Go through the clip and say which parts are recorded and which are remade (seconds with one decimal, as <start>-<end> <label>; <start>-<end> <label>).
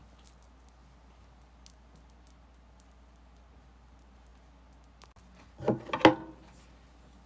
0.0-7.3 recorded